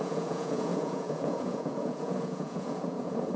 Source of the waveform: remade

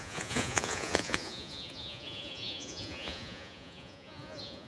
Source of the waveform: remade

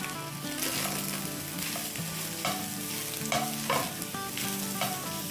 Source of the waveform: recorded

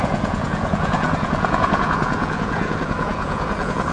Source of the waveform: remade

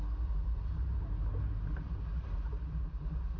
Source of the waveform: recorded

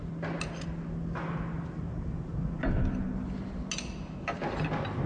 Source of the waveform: recorded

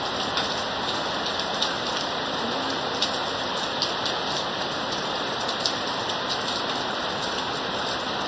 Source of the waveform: recorded